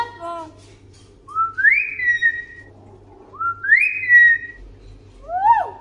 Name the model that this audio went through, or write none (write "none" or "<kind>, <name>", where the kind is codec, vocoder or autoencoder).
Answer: none